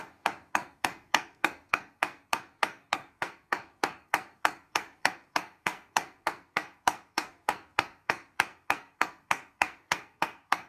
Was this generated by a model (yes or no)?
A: yes